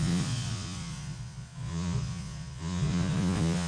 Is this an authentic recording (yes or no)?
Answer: no